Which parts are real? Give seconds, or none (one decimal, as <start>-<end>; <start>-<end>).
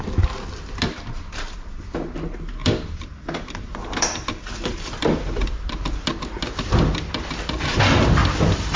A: 0.0-2.6; 7.4-8.2